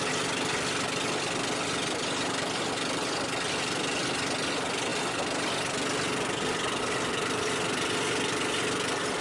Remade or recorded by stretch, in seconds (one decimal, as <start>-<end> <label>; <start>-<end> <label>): 0.0-9.2 recorded